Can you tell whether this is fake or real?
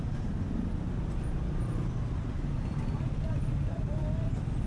real